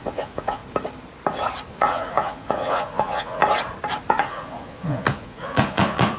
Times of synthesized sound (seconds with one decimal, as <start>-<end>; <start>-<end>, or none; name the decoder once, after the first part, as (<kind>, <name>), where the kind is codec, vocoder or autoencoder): 0.0-0.6 (vocoder, Vocos); 1.7-3.4; 4.1-6.2